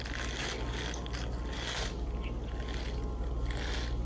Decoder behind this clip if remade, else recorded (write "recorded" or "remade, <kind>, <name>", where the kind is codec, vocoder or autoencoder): recorded